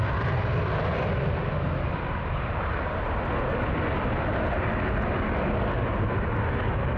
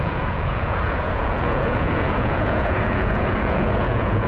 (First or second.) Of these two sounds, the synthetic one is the second